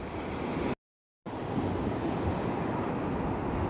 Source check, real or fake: real